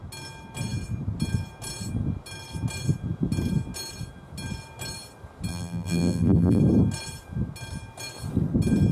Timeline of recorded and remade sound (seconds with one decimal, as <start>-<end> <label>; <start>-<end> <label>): 0.0-5.5 recorded; 5.5-6.6 remade; 6.6-8.9 recorded